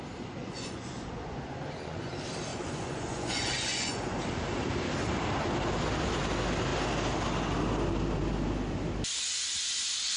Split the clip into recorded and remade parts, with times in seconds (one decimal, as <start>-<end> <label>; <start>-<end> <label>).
0.0-0.4 recorded; 0.4-2.1 remade; 2.1-2.5 recorded; 2.5-4.2 remade; 4.2-10.2 recorded